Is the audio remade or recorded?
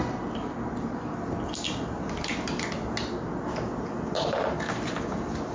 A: recorded